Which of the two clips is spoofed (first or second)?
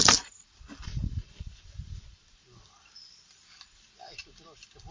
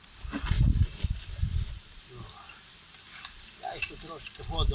first